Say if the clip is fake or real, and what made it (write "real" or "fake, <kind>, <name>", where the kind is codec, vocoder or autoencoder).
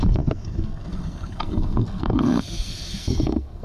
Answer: fake, codec, SNAC